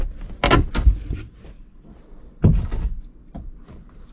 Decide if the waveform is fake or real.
real